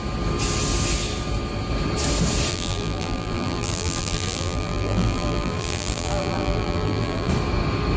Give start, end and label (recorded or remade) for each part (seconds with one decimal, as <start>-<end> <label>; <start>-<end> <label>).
0.0-2.5 recorded; 2.5-7.3 remade; 7.3-8.0 recorded